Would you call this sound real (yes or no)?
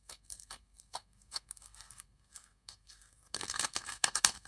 no